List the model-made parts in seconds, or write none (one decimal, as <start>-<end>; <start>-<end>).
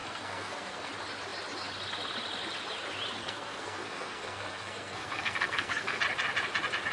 0.0-0.9; 3.2-6.0